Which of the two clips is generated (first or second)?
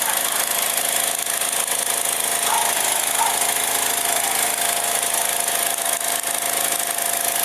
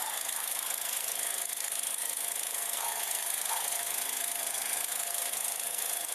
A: second